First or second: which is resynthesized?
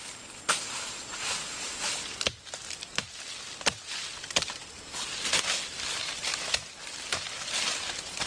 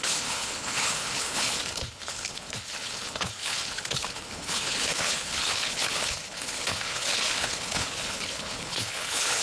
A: second